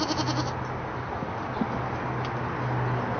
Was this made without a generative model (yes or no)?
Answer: yes